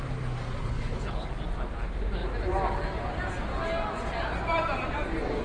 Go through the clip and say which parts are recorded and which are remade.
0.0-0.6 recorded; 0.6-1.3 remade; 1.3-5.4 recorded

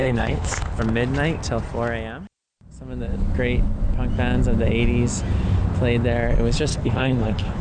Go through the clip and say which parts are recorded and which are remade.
0.0-0.8 remade; 0.8-6.7 recorded; 6.7-7.6 remade

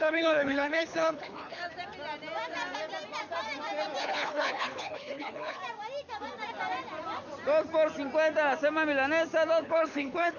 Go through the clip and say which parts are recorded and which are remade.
0.0-1.6 remade; 1.6-4.0 recorded; 4.0-5.6 remade; 5.6-9.6 recorded; 9.6-10.4 remade

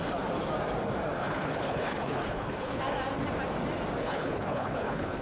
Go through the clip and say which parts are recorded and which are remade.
0.0-1.2 recorded; 1.2-2.8 remade; 2.8-4.0 recorded; 4.0-5.2 remade